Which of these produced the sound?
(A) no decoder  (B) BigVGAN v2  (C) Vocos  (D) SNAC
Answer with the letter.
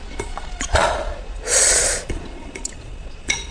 C